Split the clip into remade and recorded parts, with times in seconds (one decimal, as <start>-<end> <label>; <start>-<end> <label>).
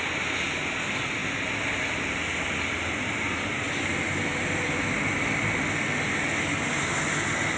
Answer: 0.0-7.6 recorded